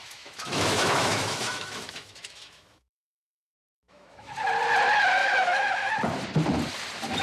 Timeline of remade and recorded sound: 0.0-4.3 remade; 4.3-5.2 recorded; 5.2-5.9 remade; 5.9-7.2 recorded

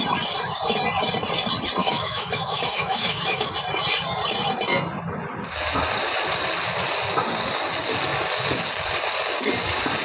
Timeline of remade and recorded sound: 0.0-1.8 recorded; 1.8-3.5 remade; 3.5-10.0 recorded

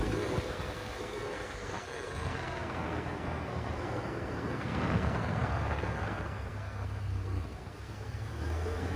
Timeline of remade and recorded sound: 0.0-9.0 remade

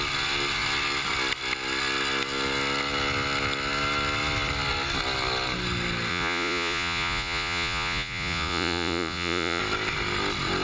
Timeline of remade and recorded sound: 0.0-6.1 recorded; 6.1-9.6 remade; 9.6-10.6 recorded

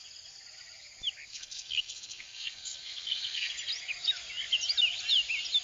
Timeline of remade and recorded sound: 0.0-1.3 recorded; 1.3-3.5 remade; 3.5-5.6 recorded